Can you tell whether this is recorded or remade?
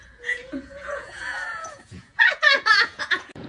remade